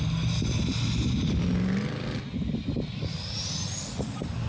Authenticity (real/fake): real